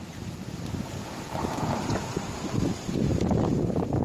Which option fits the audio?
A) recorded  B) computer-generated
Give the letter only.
B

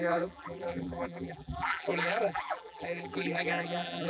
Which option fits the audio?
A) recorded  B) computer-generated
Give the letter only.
B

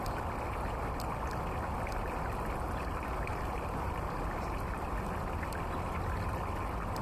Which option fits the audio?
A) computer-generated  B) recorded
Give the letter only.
B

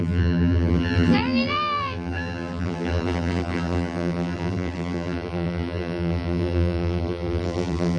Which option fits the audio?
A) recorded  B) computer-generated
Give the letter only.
B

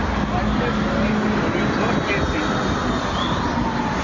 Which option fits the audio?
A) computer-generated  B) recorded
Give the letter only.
B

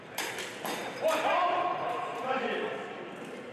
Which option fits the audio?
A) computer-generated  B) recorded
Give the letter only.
A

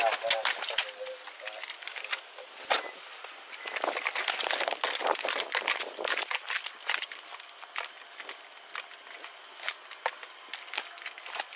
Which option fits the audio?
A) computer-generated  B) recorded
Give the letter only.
B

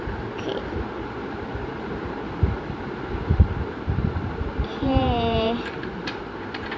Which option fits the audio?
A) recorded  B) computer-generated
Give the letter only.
B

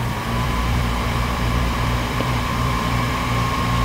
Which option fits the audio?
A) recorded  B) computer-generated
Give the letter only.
B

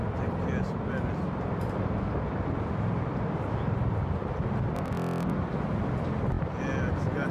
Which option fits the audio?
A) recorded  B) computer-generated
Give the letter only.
A